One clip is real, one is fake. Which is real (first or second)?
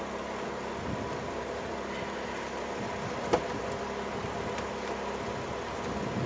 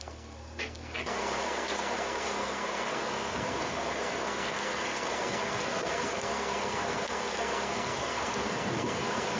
first